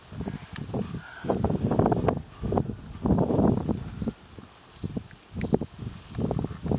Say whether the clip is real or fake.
real